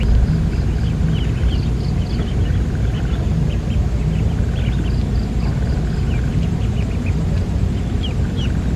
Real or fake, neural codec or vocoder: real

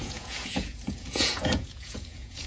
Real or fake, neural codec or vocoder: fake, vocoder, Vocos